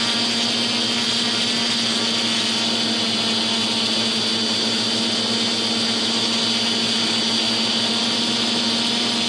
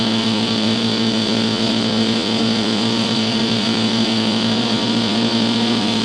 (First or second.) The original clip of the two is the first